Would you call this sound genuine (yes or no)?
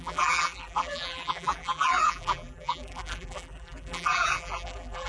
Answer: no